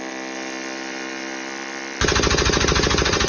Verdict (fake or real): real